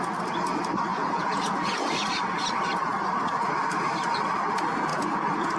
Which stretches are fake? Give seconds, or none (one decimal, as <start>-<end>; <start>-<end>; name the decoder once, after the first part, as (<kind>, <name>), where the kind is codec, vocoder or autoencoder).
0.9-1.9 (vocoder, Vocos); 4.9-5.6